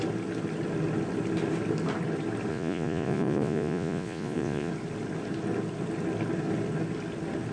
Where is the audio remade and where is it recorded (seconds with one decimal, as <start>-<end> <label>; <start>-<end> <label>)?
0.0-2.5 recorded; 2.5-4.7 remade; 4.7-7.5 recorded